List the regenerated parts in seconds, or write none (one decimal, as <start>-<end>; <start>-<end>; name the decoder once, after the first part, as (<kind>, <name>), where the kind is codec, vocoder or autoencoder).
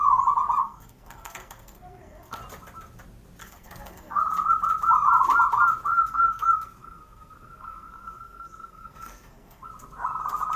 0.6-2.4 (codec, SNAC); 3.4-4.2; 5.9-9.7